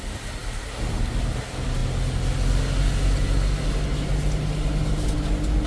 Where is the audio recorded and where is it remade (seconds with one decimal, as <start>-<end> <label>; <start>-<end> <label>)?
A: 0.0-5.7 recorded